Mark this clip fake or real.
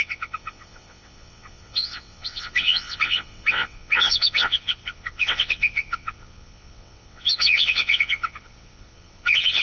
fake